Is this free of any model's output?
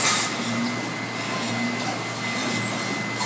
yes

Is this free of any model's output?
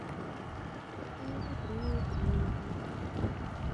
yes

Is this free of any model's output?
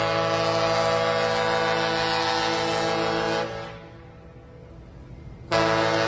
yes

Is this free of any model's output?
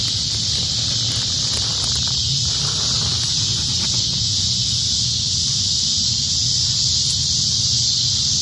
yes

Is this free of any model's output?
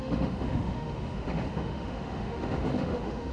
no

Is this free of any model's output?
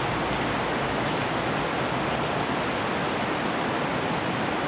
yes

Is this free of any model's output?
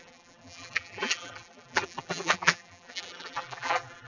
no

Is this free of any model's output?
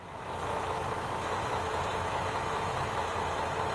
no